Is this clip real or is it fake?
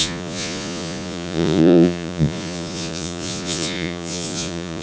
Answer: fake